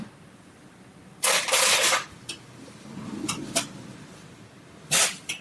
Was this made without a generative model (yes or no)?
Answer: no